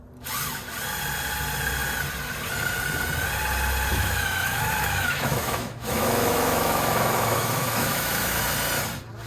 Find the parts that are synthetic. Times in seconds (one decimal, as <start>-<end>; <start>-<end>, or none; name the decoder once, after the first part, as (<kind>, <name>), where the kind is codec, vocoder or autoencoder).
3.9-8.4 (autoencoder, DAC-VAE)